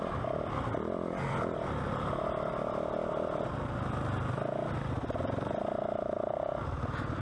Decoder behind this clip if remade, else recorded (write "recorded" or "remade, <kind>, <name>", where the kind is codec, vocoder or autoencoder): recorded